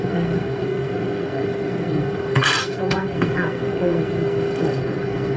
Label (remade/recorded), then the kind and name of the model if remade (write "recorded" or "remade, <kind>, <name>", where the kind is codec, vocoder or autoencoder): remade, codec, SNAC